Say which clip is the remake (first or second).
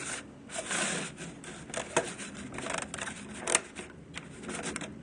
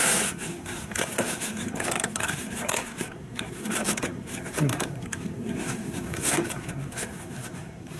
second